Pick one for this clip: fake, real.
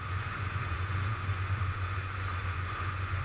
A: fake